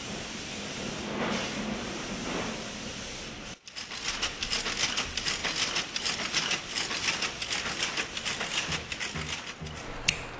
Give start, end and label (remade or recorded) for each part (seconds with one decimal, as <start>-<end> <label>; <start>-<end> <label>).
0.0-10.4 recorded

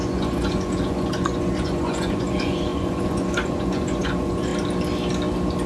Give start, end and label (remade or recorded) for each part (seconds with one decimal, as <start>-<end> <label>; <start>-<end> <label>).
0.0-4.5 remade; 4.5-5.7 recorded